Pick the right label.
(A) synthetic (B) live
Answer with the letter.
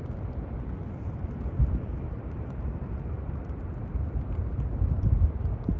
B